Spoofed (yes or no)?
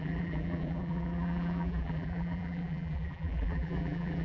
yes